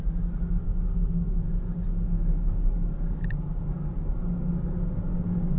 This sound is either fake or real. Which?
real